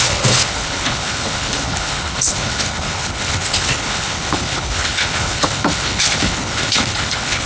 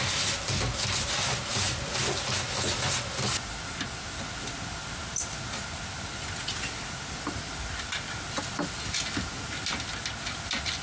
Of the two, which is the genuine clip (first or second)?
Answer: second